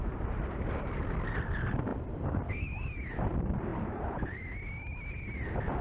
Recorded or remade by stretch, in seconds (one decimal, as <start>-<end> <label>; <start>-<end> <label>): 0.0-0.7 remade; 0.7-3.7 recorded; 3.7-4.4 remade; 4.4-5.8 recorded